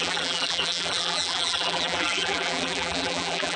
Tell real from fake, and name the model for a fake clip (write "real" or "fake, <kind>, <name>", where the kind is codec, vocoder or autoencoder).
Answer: fake, vocoder, BigVGAN v2